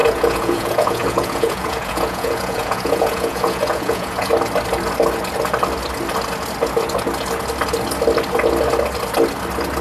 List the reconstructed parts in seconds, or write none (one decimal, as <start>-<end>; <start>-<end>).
0.0-4.3

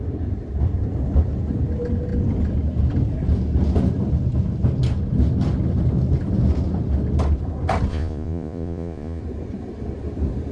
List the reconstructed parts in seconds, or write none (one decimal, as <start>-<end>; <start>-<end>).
7.9-9.2